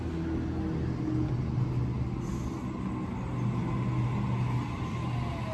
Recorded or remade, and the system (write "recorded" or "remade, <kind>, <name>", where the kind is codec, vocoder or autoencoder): recorded